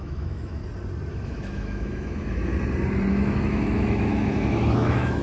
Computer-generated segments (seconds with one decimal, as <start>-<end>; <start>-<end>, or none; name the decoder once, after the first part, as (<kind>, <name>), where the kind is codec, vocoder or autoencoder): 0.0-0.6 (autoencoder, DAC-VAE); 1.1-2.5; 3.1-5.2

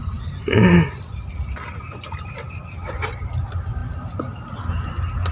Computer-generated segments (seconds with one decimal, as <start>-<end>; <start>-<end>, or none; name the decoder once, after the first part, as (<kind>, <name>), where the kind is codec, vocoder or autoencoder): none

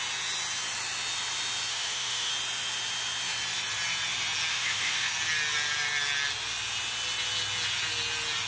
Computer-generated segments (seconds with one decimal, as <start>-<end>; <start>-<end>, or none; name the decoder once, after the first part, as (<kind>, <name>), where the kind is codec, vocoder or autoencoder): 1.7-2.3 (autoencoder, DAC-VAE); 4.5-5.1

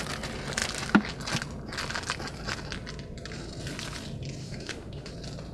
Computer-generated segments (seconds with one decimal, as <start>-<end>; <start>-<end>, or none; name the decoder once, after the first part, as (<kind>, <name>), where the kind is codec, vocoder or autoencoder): 4.4-5.1 (autoencoder, DAC-VAE)

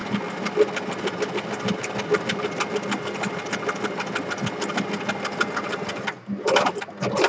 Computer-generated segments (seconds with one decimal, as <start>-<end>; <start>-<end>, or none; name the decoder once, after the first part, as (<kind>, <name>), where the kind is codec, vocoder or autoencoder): none

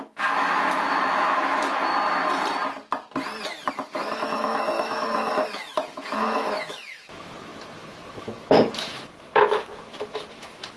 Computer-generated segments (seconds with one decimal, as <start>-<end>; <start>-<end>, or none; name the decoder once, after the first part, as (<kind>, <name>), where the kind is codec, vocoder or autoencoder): 0.0-1.9 (autoencoder, DAC-VAE); 3.7-10.8